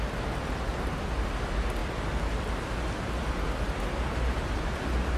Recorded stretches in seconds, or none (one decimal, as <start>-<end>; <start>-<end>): 0.0-5.2

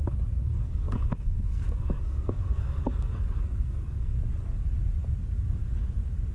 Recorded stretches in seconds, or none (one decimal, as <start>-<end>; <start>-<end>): 0.0-0.4; 4.2-6.3

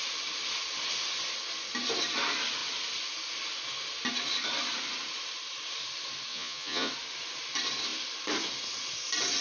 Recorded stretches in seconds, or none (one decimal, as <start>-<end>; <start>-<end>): 0.0-6.3; 6.9-9.4

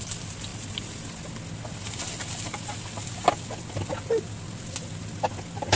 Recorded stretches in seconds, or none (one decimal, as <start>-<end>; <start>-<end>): 0.0-5.8

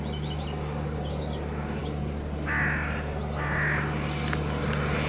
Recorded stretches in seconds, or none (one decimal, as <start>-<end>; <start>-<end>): 0.0-5.1

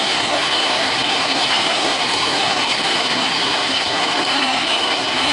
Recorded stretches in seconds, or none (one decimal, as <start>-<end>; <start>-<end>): none

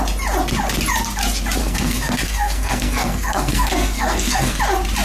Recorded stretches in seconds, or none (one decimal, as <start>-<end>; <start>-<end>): 0.0-1.6; 4.6-5.0